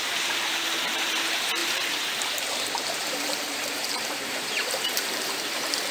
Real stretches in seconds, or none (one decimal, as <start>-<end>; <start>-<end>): none